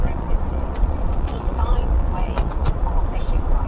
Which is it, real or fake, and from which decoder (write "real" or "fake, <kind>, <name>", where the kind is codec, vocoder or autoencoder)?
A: fake, vocoder, Vocos